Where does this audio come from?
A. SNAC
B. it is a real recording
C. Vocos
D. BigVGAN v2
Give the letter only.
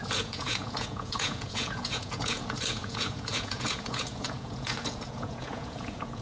C